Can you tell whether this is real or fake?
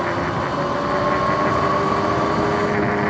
real